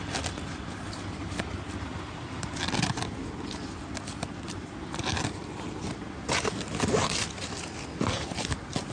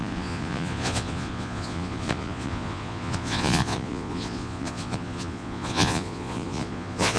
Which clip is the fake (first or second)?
second